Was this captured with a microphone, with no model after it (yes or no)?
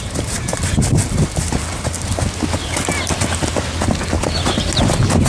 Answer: yes